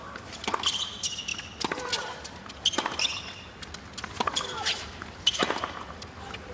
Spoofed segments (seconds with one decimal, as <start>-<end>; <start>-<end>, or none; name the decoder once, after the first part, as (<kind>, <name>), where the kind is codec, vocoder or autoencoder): none